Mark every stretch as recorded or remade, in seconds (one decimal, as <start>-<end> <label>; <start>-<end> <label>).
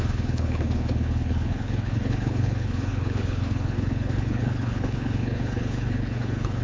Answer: 0.0-6.6 remade